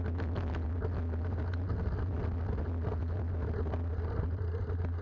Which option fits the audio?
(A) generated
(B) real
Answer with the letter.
B